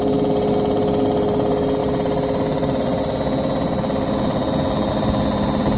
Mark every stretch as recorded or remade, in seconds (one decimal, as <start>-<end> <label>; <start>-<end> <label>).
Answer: 0.0-5.8 recorded